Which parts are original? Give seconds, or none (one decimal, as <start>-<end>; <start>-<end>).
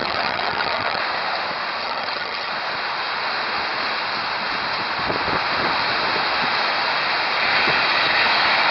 1.0-1.8; 2.5-8.7